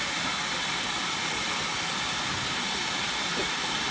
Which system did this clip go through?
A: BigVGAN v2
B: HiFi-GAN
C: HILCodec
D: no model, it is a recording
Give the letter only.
D